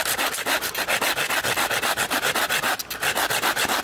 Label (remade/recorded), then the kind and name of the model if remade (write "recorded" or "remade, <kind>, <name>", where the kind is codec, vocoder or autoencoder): recorded